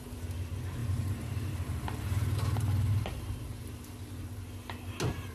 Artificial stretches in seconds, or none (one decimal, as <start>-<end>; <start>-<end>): 0.8-2.9